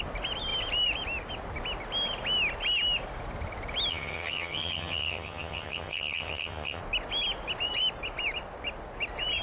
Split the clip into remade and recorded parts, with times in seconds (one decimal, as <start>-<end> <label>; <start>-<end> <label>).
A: 0.0-3.9 recorded; 3.9-6.8 remade; 6.8-9.4 recorded